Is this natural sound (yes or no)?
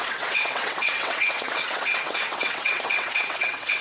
no